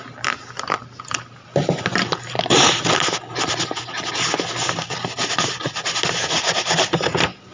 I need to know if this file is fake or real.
real